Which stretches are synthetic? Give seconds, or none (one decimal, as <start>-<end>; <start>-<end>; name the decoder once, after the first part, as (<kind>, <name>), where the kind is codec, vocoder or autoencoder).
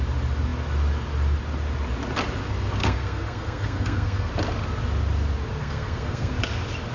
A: 2.8-4.3 (codec, SNAC); 5.6-6.3